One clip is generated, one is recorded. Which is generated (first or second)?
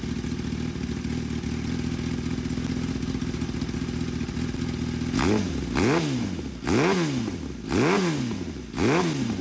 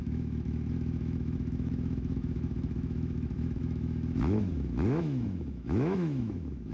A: second